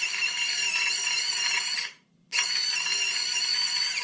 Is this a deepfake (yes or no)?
no